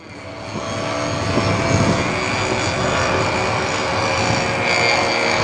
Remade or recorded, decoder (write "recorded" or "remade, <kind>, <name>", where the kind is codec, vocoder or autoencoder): recorded